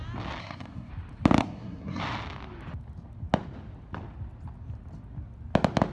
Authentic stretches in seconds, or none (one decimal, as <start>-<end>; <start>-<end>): 0.0-0.4; 0.9-1.4; 2.0-5.9